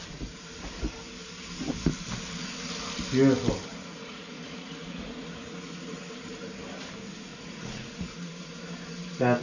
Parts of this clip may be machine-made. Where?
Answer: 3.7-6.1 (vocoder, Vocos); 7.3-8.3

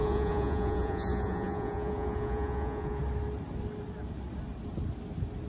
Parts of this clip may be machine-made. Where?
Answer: 0.0-3.0 (vocoder, Vocos)

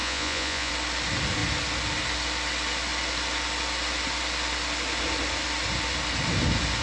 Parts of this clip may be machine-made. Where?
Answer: 0.0-0.7 (vocoder, Vocos)

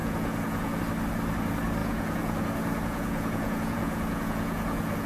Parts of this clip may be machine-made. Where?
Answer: 0.0-0.8 (vocoder, Vocos); 1.8-5.1

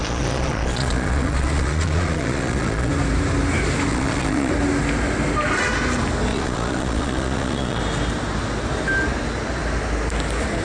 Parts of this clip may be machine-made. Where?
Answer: 0.0-2.9 (vocoder, Vocos); 3.9-4.5; 6.3-7.8